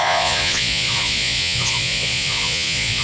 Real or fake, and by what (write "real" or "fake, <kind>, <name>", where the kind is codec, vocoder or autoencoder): fake, vocoder, Vocos